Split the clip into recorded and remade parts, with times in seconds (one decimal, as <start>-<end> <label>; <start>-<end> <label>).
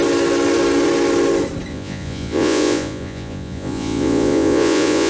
0.0-1.7 recorded; 1.7-5.1 remade